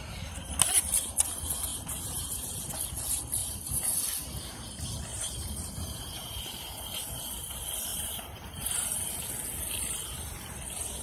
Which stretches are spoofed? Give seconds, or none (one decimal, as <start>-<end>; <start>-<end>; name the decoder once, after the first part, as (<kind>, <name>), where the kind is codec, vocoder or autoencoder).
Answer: 1.7-2.7 (vocoder, BigVGAN v2); 3.4-4.0; 5.1-6.4; 7.9-9.1